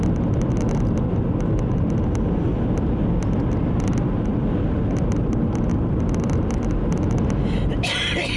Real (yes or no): yes